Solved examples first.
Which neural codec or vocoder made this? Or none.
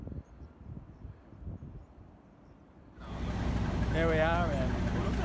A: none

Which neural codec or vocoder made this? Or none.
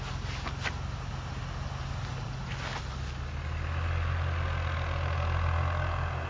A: none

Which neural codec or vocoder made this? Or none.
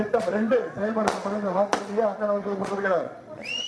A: vocoder, Vocos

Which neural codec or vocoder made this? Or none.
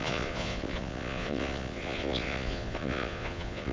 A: vocoder, Vocos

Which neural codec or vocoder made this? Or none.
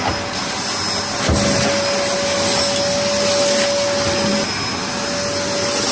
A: none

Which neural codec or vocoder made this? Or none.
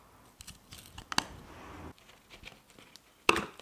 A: none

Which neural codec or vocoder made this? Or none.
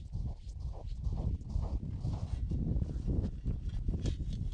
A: none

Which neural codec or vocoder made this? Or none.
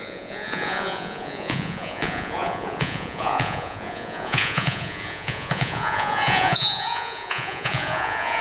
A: vocoder, Vocos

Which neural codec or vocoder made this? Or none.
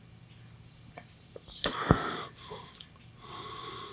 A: none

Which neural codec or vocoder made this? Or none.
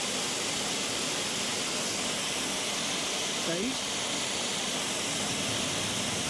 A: none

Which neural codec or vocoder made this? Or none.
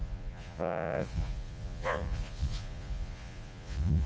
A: vocoder, Vocos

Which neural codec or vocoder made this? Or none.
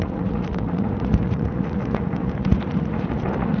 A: vocoder, Vocos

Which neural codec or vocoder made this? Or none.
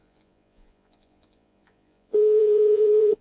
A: vocoder, Vocos